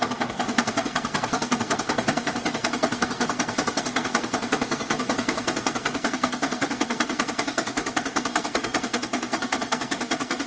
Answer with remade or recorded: remade